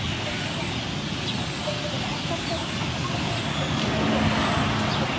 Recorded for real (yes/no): yes